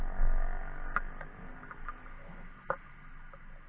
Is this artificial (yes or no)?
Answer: no